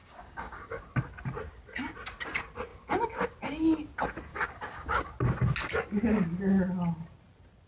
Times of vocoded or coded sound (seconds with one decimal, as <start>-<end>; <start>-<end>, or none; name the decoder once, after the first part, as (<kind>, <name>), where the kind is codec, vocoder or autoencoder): 0.0-0.8 (codec, DAC); 4.3-5.1